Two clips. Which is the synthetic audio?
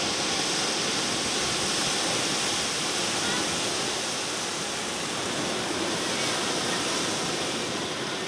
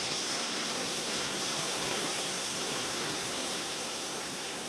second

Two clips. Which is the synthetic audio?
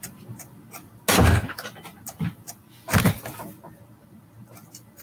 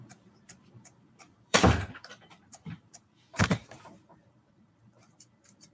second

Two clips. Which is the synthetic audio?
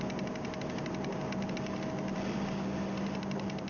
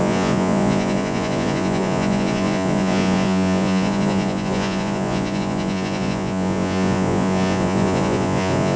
second